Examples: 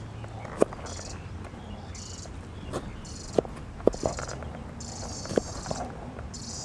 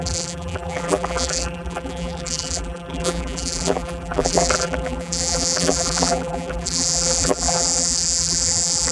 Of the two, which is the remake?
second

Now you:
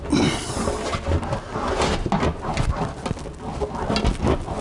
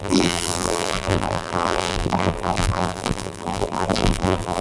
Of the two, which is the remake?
second